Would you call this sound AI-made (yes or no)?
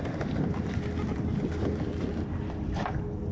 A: yes